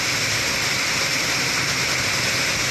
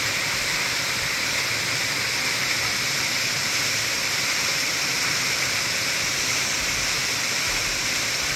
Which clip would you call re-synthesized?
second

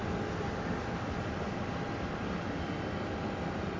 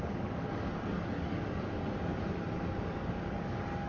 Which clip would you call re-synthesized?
second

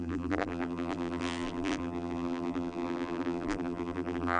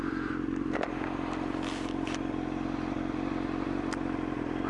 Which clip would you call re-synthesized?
first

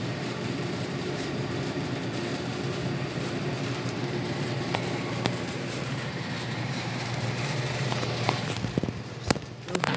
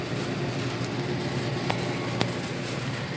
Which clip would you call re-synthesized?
first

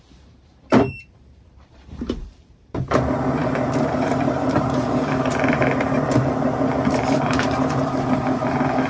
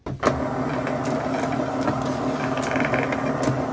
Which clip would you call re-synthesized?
first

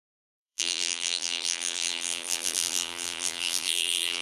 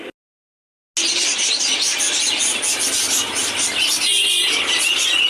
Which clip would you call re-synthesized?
first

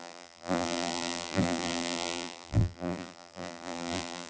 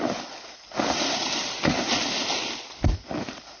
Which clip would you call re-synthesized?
first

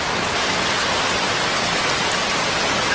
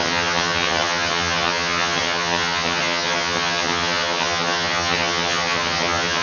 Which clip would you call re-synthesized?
second